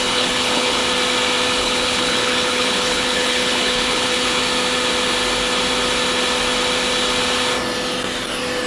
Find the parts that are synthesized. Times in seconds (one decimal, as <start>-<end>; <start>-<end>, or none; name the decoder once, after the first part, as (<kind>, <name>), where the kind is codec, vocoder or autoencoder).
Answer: 0.0-0.8 (codec, HILCodec); 1.6-4.4